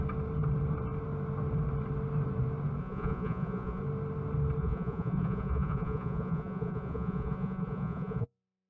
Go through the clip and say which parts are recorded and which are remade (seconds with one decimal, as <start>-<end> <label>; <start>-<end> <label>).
0.0-2.8 recorded; 2.8-3.8 remade; 3.8-4.6 recorded; 4.6-8.7 remade

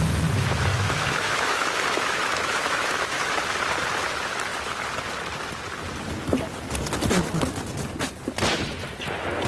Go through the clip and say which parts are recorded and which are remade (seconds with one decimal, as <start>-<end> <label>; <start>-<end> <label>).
0.0-0.7 recorded; 0.7-3.4 remade; 3.4-9.5 recorded